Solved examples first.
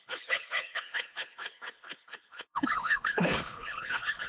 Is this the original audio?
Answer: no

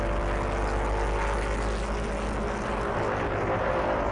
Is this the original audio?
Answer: yes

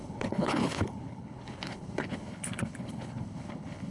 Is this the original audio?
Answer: no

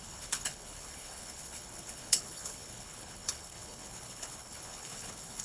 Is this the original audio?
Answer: no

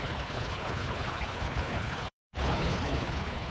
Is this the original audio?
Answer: no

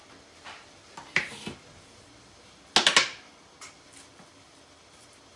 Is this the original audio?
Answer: yes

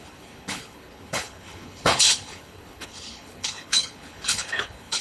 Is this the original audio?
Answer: no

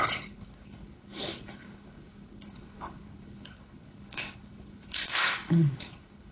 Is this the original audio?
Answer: no